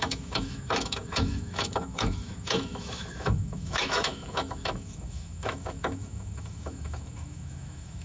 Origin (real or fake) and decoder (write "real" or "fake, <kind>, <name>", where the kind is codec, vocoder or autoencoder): fake, autoencoder, DAC-VAE